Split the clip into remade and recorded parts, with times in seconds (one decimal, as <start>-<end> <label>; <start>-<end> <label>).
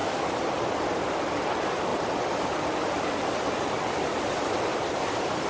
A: 0.0-5.5 remade